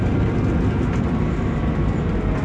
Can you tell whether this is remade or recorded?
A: recorded